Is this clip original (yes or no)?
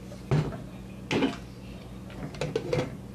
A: yes